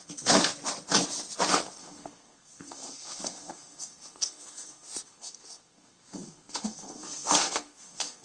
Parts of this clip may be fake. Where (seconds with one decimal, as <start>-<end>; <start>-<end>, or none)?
0.0-0.5; 1.5-8.2